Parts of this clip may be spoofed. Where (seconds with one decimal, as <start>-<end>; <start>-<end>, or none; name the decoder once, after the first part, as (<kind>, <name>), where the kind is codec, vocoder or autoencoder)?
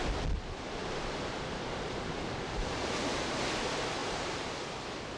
0.8-3.4 (vocoder, BigVGAN v2); 4.0-4.6